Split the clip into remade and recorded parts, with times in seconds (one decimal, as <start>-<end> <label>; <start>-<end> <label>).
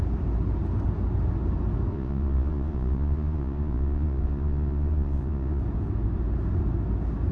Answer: 0.0-1.9 recorded; 1.9-5.6 remade; 5.6-7.3 recorded